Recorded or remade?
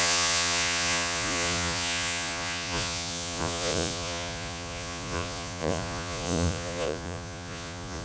remade